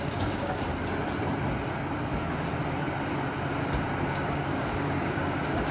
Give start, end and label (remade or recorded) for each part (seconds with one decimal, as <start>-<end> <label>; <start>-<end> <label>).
0.0-0.7 remade; 0.7-4.0 recorded; 4.0-5.7 remade